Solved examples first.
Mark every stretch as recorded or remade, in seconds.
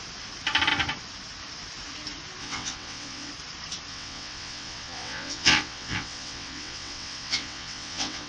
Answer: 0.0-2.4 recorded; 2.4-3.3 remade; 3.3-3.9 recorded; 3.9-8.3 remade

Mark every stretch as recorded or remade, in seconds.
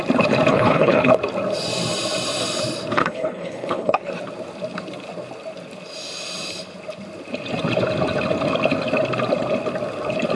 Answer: 0.0-0.5 recorded; 0.5-1.1 remade; 1.1-3.0 recorded; 3.0-4.1 remade; 4.1-10.4 recorded